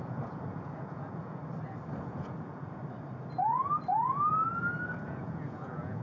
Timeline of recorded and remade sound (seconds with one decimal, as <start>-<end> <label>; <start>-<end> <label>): 0.0-1.4 remade; 1.4-2.0 recorded; 2.0-2.8 remade; 2.8-5.0 recorded; 5.0-6.0 remade